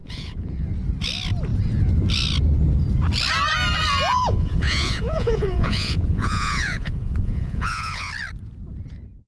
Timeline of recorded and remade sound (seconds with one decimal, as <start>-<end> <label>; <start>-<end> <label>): 0.0-0.5 remade; 0.5-4.1 recorded; 4.1-8.1 remade; 8.1-9.3 recorded